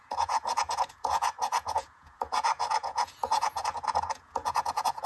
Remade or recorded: remade